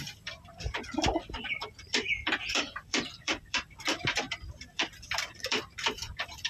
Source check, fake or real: fake